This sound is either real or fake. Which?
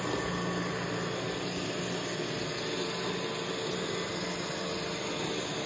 real